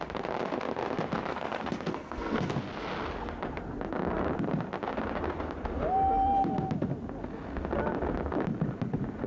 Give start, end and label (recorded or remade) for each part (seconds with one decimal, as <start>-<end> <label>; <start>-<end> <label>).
0.0-1.3 recorded; 1.3-2.5 remade; 2.5-9.3 recorded